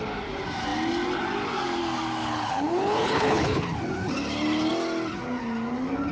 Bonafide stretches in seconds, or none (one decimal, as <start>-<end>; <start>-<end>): 0.0-2.2; 3.6-6.1